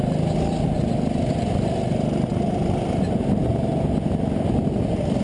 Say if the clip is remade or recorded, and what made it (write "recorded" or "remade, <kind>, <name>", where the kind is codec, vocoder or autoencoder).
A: recorded